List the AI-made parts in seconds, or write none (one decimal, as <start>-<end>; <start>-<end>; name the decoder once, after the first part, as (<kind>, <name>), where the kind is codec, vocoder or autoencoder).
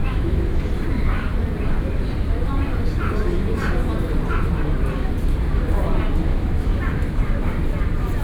0.0-0.6 (autoencoder, DAC-VAE); 6.3-6.8